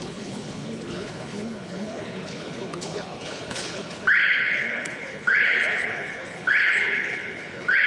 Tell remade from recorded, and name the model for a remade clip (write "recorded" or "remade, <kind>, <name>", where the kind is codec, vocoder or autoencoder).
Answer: remade, codec, HILCodec